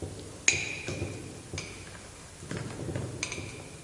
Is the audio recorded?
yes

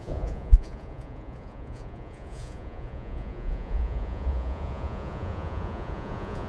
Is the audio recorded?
no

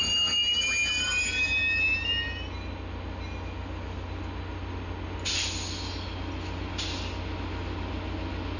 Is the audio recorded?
yes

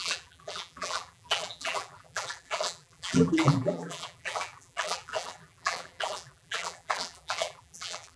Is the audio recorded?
no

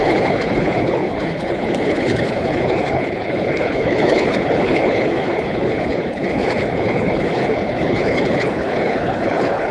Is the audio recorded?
no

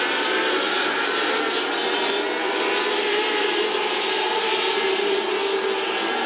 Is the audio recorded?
yes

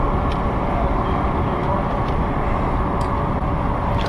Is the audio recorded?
no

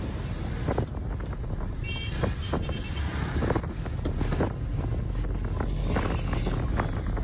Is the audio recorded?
yes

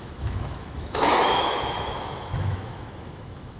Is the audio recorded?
no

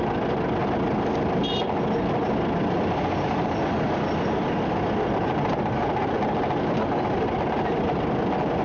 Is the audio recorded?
yes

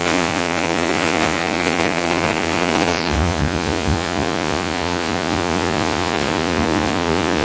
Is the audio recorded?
no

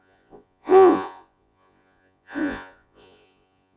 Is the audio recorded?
no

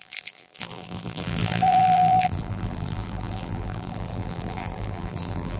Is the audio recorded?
no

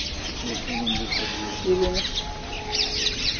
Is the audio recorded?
yes